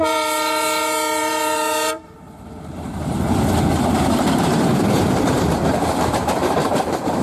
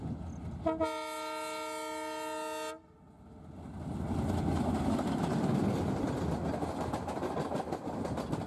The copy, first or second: first